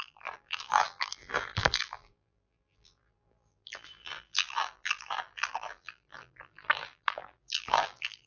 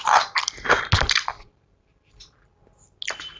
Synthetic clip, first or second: first